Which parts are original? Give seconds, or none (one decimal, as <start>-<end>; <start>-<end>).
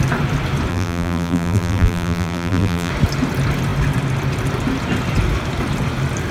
0.0-0.7; 2.9-6.3